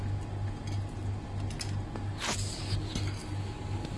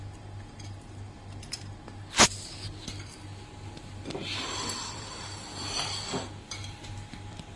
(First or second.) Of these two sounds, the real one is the first